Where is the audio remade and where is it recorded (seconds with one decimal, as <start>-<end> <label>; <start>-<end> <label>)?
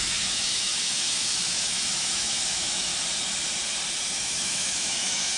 0.0-2.9 remade; 2.9-4.1 recorded; 4.1-5.4 remade